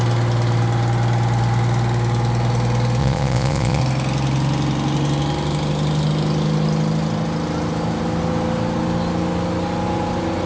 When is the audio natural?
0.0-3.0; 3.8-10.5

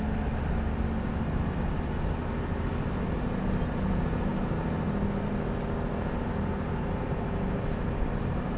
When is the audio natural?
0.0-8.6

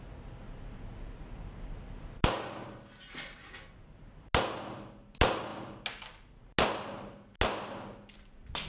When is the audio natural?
0.0-8.7